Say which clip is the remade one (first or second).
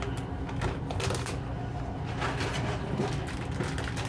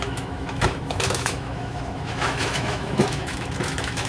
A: second